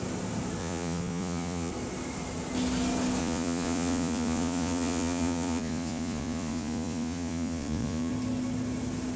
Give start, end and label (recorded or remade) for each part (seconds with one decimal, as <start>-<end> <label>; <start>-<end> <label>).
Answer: 0.0-0.6 recorded; 0.6-1.7 remade; 1.7-3.2 recorded; 3.2-8.1 remade; 8.1-9.2 recorded